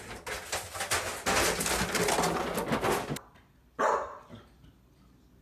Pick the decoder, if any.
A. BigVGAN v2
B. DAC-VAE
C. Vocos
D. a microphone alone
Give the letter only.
D